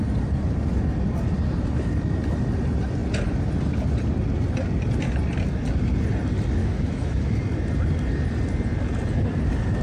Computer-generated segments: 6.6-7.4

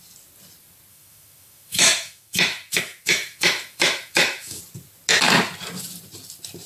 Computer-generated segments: 0.9-4.6